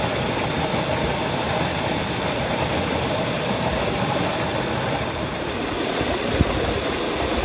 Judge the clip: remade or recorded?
recorded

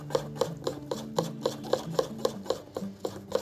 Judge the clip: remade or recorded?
recorded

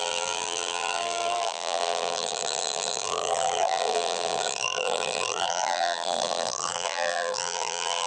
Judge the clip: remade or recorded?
remade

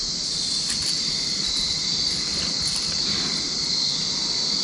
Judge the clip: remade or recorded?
recorded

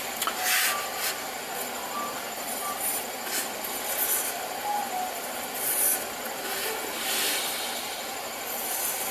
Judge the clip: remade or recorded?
recorded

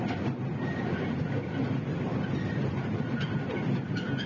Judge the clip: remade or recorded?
recorded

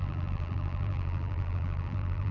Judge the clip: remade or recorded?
remade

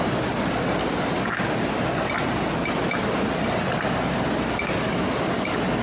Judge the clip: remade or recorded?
recorded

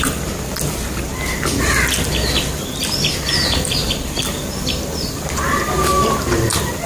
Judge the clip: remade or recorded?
remade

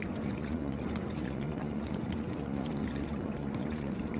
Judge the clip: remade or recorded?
remade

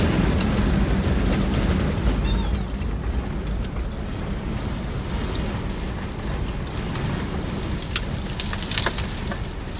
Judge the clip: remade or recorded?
recorded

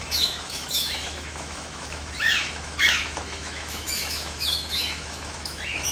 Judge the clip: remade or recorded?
remade